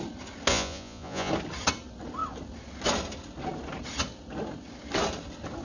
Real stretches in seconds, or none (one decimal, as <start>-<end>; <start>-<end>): 0.0-0.5; 1.3-5.6